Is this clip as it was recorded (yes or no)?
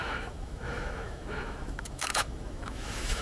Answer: no